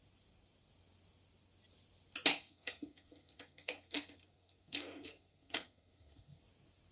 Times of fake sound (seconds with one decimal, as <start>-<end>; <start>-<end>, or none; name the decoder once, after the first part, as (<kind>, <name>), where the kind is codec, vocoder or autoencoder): 2.3-6.4 (codec, SNAC)

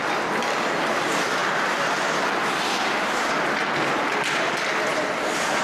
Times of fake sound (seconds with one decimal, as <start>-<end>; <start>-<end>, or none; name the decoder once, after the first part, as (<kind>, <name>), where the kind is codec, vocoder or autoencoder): none

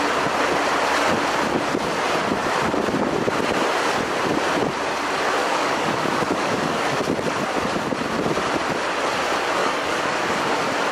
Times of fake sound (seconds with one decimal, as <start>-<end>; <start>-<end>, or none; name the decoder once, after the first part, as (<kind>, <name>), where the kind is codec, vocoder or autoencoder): 5.4-7.0 (codec, DAC); 9.6-10.4

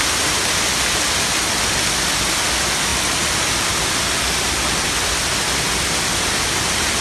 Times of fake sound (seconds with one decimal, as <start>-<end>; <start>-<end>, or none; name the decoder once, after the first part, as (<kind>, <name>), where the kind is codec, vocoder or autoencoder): none

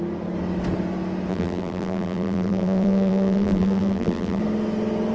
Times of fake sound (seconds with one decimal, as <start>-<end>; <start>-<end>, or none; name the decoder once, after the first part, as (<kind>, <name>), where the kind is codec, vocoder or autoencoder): 1.3-4.4 (vocoder, BigVGAN v2)

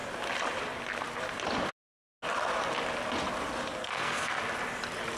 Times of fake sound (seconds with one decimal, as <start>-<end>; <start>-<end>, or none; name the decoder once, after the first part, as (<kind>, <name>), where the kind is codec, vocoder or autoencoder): 3.8-4.4 (codec, SNAC)